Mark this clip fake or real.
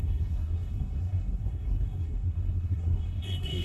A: fake